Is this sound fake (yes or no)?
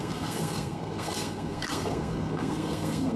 yes